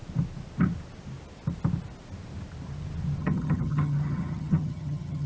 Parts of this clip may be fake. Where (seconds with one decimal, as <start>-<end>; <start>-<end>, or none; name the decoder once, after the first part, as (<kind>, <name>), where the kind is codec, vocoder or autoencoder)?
3.2-5.3 (vocoder, HiFi-GAN)